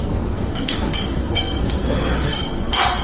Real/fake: fake